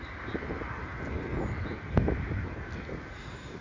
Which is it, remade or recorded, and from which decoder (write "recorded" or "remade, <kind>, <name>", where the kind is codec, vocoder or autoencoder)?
recorded